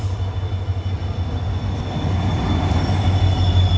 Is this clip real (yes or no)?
yes